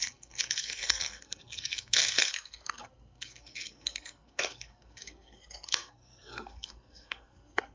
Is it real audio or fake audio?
fake